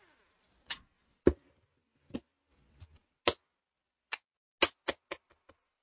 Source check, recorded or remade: recorded